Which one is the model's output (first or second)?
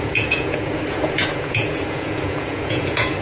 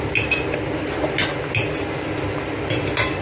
first